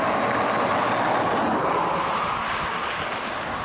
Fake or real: real